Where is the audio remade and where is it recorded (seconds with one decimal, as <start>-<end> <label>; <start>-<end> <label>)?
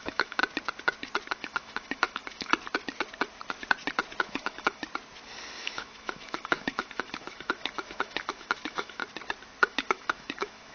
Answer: 0.0-0.4 remade; 0.4-1.3 recorded; 1.3-2.5 remade; 2.5-4.2 recorded; 4.2-4.8 remade; 4.8-5.6 recorded; 5.6-9.0 remade; 9.0-9.6 recorded; 9.6-10.7 remade